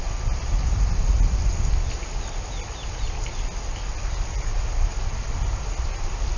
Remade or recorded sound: recorded